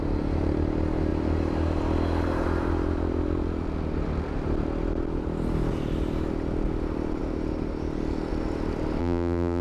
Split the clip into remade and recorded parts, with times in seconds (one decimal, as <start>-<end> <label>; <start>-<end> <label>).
0.0-9.0 recorded; 9.0-9.6 remade